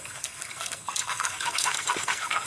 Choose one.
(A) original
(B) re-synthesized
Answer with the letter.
B